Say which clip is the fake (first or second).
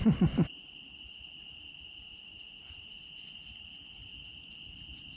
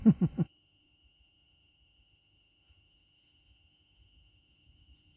second